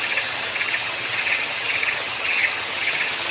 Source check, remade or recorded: remade